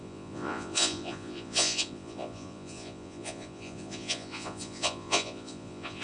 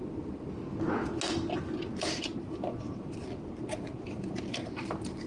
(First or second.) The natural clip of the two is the second